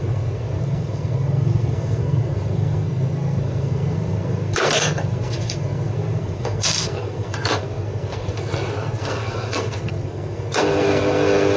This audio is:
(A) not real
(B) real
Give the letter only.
A